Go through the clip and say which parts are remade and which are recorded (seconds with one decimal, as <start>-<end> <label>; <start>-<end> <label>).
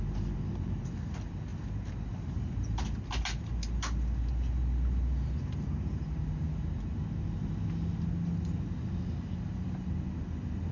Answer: 0.0-10.7 recorded